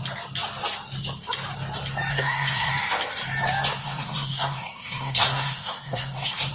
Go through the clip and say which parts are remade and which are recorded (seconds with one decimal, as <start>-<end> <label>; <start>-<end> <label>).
0.0-2.1 recorded; 2.1-2.7 remade; 2.7-3.8 recorded; 3.8-6.5 remade